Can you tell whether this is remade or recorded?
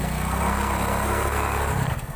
remade